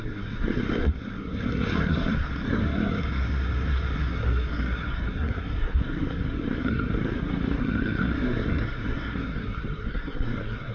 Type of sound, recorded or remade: remade